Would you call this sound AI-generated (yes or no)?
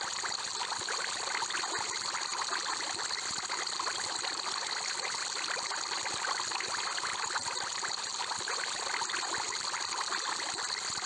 no